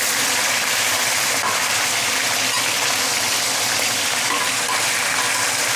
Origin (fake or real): real